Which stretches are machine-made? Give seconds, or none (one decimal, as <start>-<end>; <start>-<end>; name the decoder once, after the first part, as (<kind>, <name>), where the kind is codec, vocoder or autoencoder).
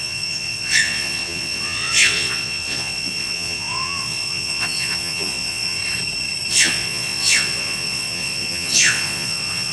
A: 0.0-5.8 (vocoder, Vocos); 6.5-9.7